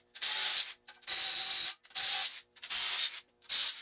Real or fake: real